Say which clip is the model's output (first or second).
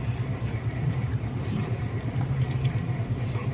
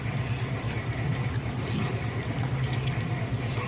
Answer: first